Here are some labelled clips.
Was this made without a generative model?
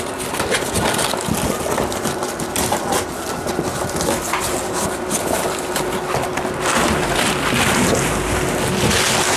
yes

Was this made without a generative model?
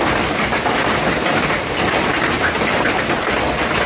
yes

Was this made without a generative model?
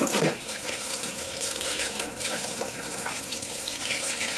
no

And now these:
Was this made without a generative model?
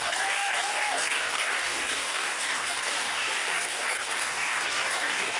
no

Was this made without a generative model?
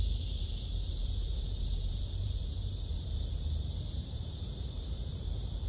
no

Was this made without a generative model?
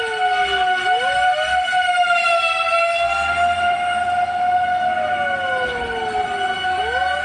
yes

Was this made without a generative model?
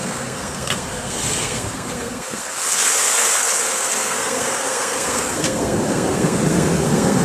no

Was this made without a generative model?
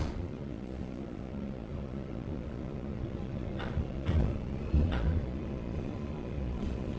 no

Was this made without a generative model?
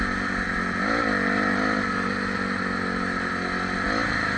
yes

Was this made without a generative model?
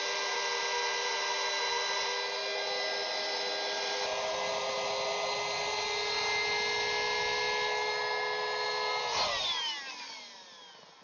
yes